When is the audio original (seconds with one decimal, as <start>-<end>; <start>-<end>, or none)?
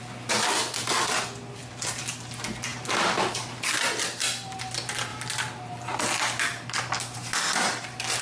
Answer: 0.0-2.7; 3.8-8.2